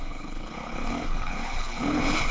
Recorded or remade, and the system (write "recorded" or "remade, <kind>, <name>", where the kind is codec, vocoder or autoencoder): remade, codec, HILCodec